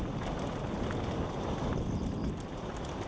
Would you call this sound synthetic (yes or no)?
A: no